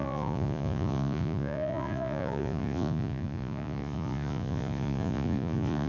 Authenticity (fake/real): fake